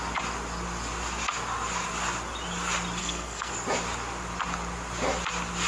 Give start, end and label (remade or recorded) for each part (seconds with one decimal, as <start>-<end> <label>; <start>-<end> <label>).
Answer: 0.0-3.0 recorded; 3.0-3.5 remade; 3.5-5.7 recorded